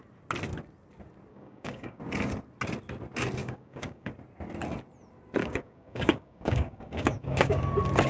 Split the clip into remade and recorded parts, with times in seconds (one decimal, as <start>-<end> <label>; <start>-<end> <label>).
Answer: 0.0-1.3 recorded; 1.3-2.0 remade; 2.0-3.4 recorded; 3.4-4.1 remade; 4.1-5.4 recorded; 5.4-7.6 remade; 7.6-8.1 recorded